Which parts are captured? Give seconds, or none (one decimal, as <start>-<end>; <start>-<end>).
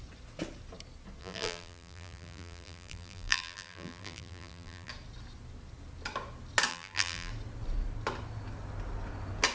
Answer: 0.0-1.2; 4.9-6.7; 7.3-9.5